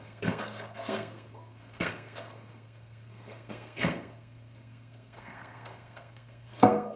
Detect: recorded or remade remade